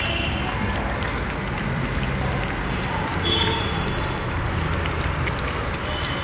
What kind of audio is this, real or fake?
real